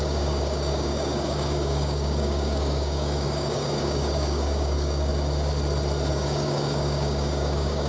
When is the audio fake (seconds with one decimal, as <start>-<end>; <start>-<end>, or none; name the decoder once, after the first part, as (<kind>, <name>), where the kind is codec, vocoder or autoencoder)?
0.0-5.1 (codec, DAC); 6.1-7.9